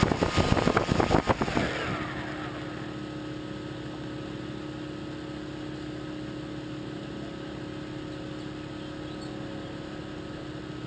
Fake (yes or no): no